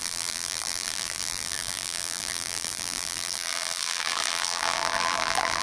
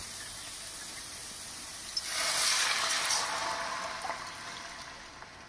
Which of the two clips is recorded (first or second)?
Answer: second